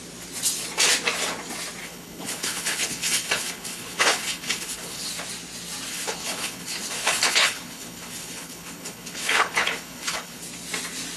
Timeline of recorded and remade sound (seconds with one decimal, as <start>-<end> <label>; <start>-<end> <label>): 0.0-1.8 recorded; 1.8-5.1 remade; 5.1-5.9 recorded; 5.9-10.4 remade; 10.4-11.2 recorded